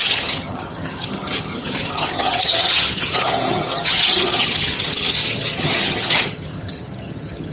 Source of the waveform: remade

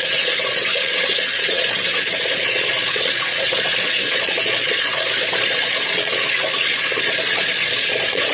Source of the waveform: remade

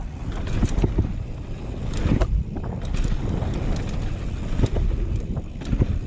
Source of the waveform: recorded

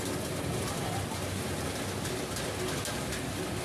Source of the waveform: recorded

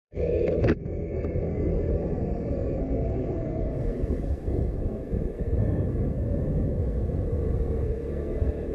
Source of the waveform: remade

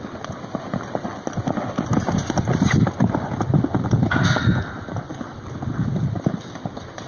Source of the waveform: recorded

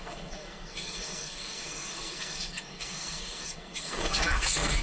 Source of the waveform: remade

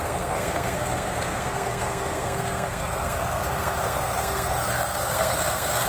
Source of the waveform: remade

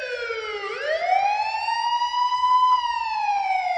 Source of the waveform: recorded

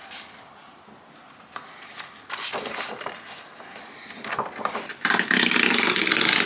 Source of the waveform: recorded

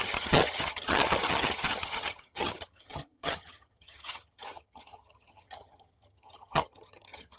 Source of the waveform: remade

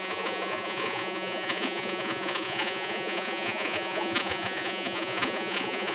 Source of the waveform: remade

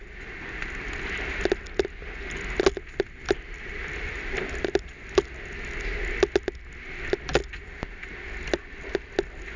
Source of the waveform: recorded